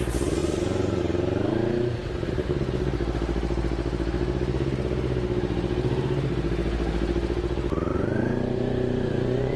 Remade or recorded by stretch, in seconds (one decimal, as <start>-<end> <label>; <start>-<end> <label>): 0.0-0.4 recorded; 0.4-1.0 remade; 1.0-7.9 recorded; 7.9-9.6 remade